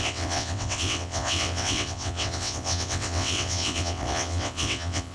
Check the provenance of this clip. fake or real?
fake